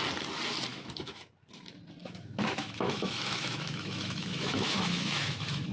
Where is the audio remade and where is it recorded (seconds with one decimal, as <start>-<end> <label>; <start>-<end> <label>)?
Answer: 0.0-0.7 recorded; 0.7-1.3 remade; 1.3-2.0 recorded; 2.0-5.7 remade